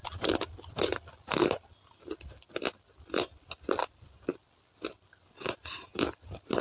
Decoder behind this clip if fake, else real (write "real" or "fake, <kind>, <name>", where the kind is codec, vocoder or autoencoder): real